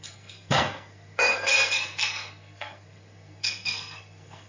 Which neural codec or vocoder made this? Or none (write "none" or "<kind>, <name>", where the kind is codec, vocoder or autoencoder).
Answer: codec, SNAC